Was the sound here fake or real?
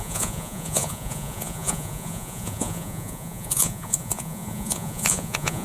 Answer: fake